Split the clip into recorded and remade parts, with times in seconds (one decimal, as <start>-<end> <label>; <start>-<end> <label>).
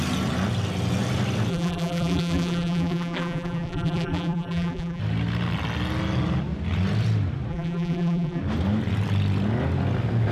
0.0-1.5 recorded; 1.5-5.0 remade; 5.0-7.5 recorded; 7.5-8.4 remade; 8.4-10.3 recorded